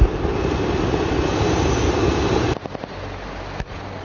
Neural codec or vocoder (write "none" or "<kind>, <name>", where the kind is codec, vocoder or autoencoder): none